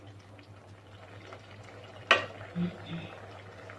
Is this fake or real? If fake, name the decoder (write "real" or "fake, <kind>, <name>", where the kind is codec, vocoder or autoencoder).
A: real